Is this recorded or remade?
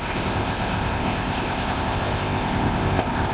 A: remade